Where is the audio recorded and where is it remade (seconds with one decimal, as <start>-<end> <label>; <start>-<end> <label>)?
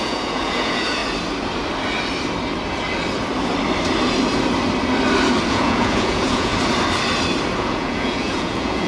0.0-1.0 remade; 1.0-5.5 recorded; 5.5-6.5 remade; 6.5-7.6 recorded; 7.6-8.9 remade